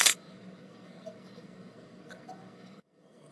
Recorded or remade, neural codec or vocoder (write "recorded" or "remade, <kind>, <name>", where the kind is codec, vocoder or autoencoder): remade, codec, SNAC